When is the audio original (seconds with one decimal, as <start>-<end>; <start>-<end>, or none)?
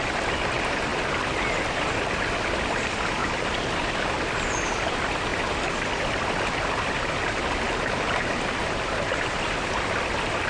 0.0-10.5